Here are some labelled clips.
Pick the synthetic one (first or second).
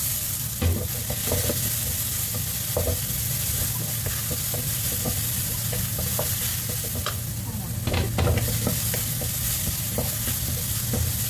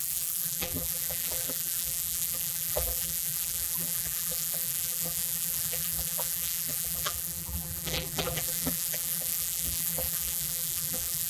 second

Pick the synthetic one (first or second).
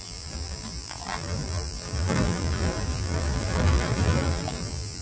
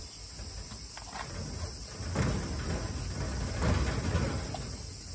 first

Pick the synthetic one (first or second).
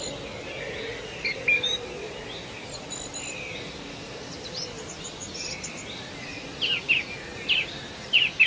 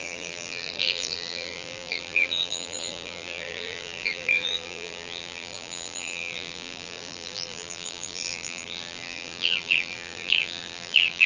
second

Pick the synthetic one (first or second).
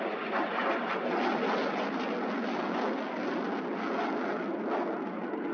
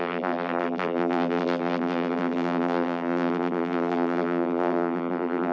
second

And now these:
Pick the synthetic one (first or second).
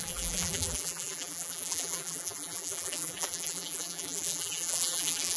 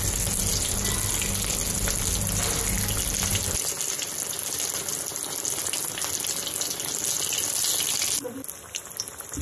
first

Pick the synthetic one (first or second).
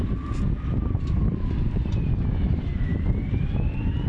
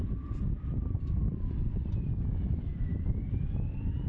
second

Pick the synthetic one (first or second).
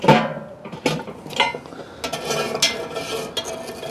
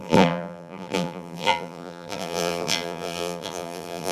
second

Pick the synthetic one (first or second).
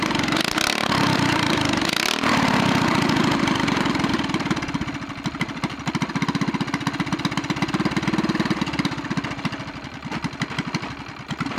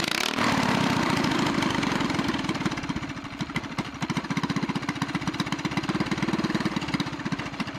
second